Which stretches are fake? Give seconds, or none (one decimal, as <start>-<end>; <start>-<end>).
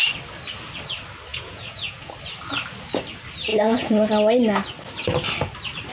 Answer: 1.3-2.1; 3.5-4.1